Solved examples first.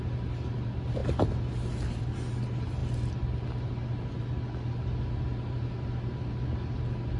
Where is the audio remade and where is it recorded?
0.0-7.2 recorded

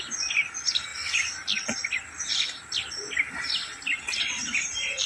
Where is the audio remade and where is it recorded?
0.0-5.1 recorded